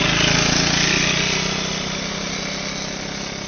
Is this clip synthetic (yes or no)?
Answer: no